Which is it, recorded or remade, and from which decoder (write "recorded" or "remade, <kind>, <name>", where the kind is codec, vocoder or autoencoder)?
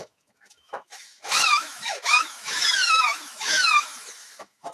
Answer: remade, autoencoder, DAC-VAE